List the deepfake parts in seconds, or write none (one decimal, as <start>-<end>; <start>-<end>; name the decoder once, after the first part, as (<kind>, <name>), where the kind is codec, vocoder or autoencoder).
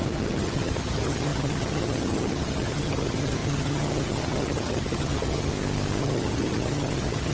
0.0-5.5 (vocoder, HiFi-GAN); 6.0-7.3